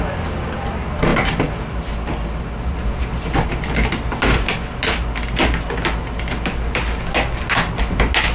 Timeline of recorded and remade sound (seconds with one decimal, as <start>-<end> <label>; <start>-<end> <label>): 0.0-8.3 recorded

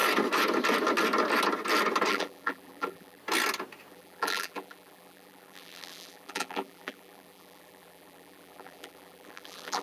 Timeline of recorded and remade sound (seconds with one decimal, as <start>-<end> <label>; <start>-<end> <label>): 0.0-2.1 recorded; 2.1-3.2 remade; 3.2-3.9 recorded; 3.9-9.8 remade

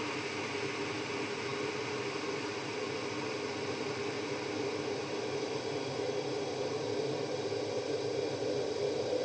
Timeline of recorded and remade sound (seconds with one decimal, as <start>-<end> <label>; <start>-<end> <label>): 0.0-9.2 recorded

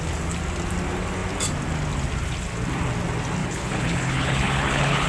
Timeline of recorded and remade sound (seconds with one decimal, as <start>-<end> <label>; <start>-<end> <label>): 0.0-3.4 recorded; 3.4-5.1 remade

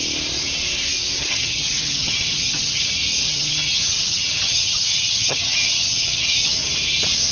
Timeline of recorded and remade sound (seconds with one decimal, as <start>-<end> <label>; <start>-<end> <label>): 0.0-1.2 recorded; 1.2-2.9 remade; 2.9-3.3 recorded; 3.3-6.7 remade; 6.7-7.3 recorded

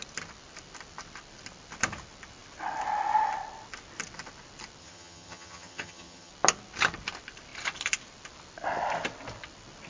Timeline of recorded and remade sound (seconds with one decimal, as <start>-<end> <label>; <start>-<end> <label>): 0.0-4.8 recorded; 4.8-6.3 remade; 6.3-9.9 recorded

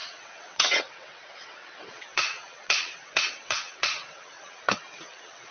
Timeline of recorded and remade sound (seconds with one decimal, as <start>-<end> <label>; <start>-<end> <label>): 0.0-5.5 remade

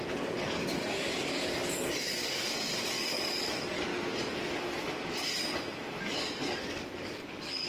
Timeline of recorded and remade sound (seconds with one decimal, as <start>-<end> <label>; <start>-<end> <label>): 0.0-3.9 remade; 3.9-6.0 recorded; 6.0-7.7 remade